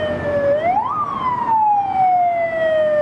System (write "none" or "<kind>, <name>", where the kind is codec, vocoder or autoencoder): none